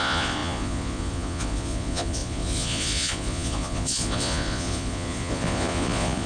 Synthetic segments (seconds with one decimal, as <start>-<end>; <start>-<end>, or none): 0.0-6.3